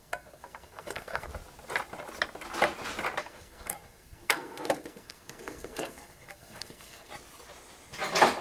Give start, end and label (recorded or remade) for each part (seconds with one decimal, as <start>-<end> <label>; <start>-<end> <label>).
0.0-1.3 remade; 1.3-3.2 recorded; 3.2-7.1 remade; 7.1-8.4 recorded